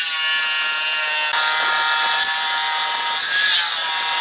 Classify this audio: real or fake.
real